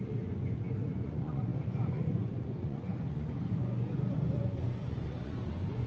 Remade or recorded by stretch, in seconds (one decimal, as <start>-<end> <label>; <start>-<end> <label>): 0.0-5.9 remade